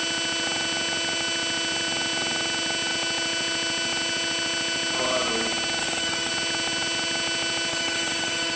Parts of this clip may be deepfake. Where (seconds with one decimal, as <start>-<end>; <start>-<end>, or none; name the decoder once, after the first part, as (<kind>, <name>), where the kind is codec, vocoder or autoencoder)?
5.8-6.3 (codec, DAC); 7.7-8.6